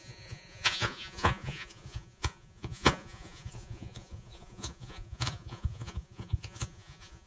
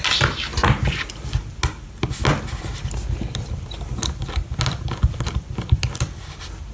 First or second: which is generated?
first